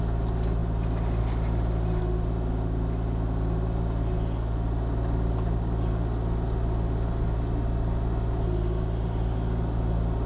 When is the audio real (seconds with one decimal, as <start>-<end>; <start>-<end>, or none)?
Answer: 0.0-10.3